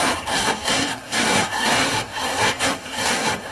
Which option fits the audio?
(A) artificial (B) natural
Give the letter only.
A